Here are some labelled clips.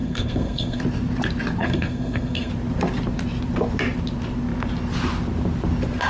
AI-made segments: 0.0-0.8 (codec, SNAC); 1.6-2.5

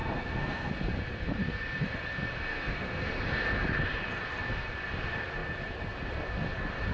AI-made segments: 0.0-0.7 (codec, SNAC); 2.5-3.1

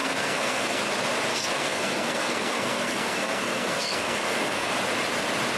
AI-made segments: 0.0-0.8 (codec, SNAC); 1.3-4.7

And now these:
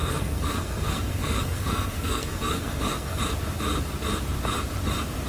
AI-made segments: 0.0-3.2 (codec, SNAC)

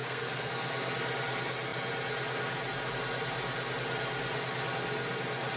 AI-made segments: 0.0-0.5 (codec, SNAC)